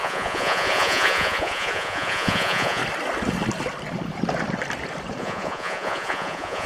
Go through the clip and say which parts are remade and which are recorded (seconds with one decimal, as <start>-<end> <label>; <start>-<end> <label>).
0.0-2.8 remade; 2.8-5.2 recorded; 5.2-6.7 remade